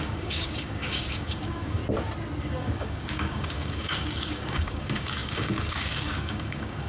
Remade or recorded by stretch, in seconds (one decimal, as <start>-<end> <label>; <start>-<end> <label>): 0.0-1.8 remade; 1.8-2.4 recorded; 2.4-6.9 remade